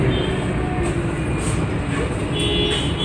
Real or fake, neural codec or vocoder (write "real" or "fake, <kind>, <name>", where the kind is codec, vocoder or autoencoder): real